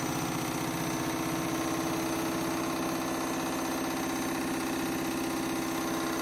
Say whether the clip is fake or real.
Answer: real